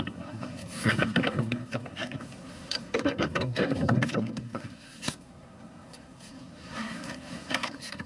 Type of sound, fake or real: fake